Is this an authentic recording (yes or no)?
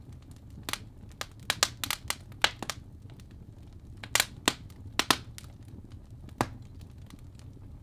yes